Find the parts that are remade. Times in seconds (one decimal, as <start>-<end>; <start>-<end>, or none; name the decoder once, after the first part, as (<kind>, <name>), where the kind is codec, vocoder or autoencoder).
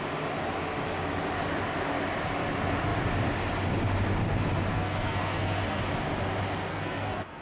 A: 4.7-5.8 (codec, SNAC); 6.7-7.4